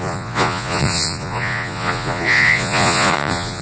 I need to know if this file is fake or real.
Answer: fake